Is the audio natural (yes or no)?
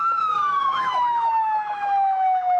no